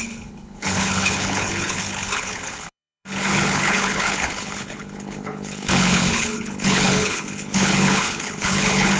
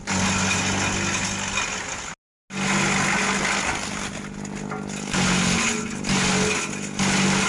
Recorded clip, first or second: second